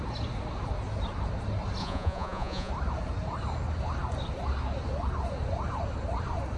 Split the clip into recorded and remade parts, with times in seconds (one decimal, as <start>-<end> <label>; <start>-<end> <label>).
0.0-1.8 recorded; 1.8-2.7 remade; 2.7-6.6 recorded